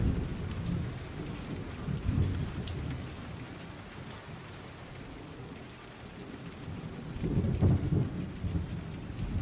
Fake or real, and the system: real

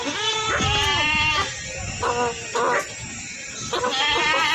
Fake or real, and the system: real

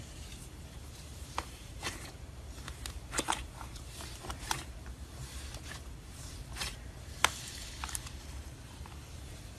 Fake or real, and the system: fake, vocoder, BigVGAN v2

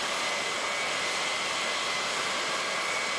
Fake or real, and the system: fake, vocoder, BigVGAN v2